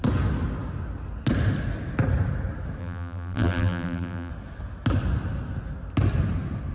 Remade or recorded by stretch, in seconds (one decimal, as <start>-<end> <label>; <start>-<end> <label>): 0.0-2.8 recorded; 2.8-4.3 remade; 4.3-6.7 recorded